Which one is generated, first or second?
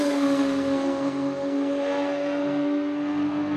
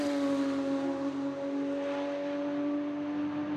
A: first